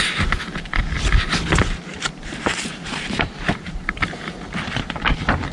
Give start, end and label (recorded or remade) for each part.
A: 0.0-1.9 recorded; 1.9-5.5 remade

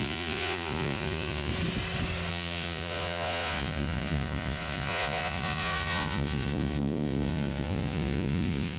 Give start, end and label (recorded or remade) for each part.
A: 0.0-1.5 remade; 1.5-2.3 recorded; 2.3-8.8 remade

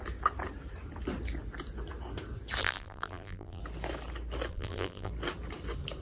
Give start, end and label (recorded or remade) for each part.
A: 0.0-2.6 recorded; 2.6-3.6 remade; 3.6-4.5 recorded; 4.5-5.1 remade; 5.1-6.0 recorded